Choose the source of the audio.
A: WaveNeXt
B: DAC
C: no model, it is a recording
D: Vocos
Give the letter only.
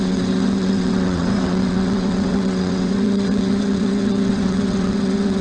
A